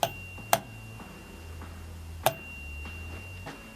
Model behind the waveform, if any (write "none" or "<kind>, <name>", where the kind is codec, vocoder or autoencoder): none